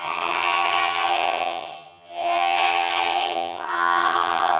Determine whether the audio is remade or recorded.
remade